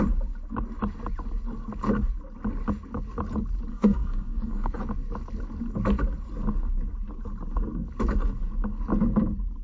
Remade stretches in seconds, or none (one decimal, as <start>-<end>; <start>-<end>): 3.7-4.8